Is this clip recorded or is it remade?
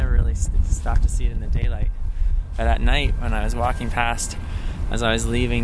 recorded